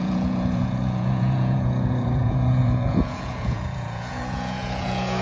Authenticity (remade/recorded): remade